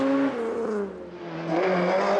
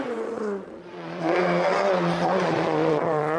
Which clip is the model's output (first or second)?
second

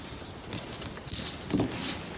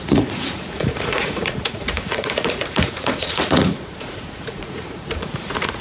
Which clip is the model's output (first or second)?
second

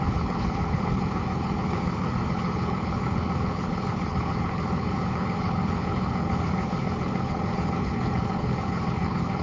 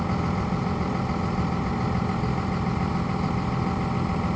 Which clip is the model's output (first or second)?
first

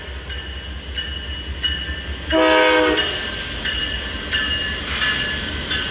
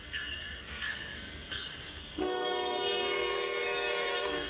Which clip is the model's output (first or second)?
second